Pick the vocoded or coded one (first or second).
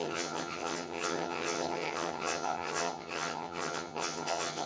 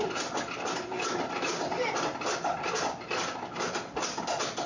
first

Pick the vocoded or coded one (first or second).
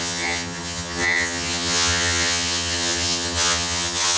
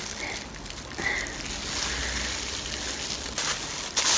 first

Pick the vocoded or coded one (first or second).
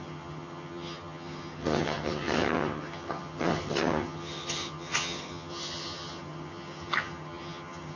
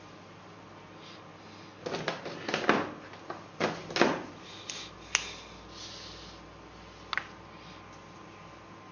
first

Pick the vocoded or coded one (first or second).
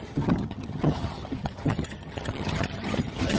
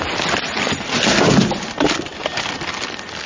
first